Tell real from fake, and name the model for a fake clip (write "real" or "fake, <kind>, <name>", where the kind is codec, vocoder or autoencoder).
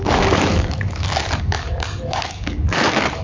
fake, codec, DAC